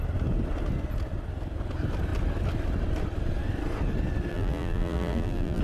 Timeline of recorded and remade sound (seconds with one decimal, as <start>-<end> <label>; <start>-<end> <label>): 0.0-4.3 recorded; 4.3-5.6 remade